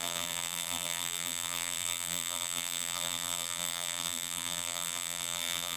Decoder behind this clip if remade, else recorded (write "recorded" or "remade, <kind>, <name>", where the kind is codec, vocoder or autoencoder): remade, vocoder, BigVGAN v2